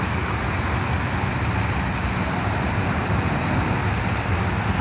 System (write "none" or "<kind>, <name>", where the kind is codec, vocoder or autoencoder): none